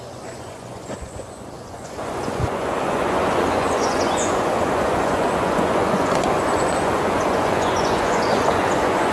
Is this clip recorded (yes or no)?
no